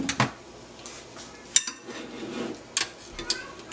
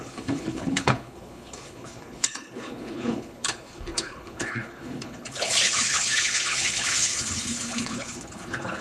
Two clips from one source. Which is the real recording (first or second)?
first